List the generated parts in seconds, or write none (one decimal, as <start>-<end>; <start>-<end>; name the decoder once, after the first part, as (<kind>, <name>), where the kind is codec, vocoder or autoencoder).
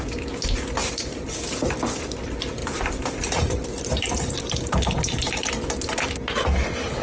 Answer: 0.8-1.4 (vocoder, BigVGAN v2); 2.6-5.5